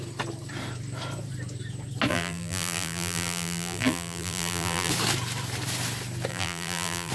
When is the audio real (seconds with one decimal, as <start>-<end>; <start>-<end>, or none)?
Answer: 0.0-2.1; 4.9-6.3